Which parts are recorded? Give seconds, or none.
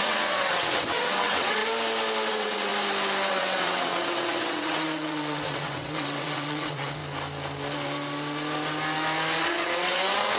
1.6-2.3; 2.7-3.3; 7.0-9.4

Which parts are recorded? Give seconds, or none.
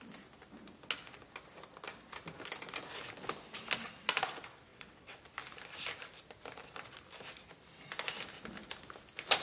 0.0-4.7; 5.2-9.4